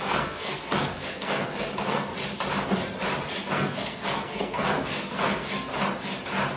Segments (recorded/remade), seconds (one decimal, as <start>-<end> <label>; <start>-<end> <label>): 0.0-2.1 remade; 2.1-3.5 recorded; 3.5-5.5 remade; 5.5-6.6 recorded